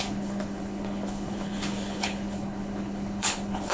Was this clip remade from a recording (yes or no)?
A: yes